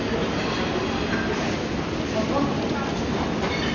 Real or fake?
real